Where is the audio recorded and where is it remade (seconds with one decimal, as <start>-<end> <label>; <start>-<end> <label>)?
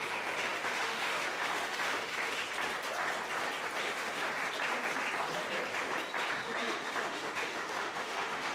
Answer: 0.0-2.4 remade; 2.4-3.8 recorded; 3.8-4.3 remade; 4.3-6.3 recorded; 6.3-8.5 remade